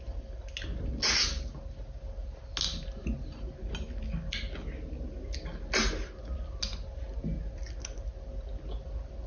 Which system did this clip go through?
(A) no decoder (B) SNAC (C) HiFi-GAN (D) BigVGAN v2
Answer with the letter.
A